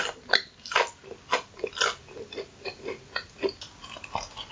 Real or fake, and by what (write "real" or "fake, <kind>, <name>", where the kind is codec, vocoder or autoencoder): real